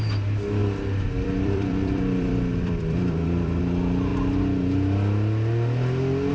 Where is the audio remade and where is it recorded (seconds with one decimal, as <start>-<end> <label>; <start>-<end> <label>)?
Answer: 0.0-0.6 recorded; 0.6-3.6 remade; 3.6-6.3 recorded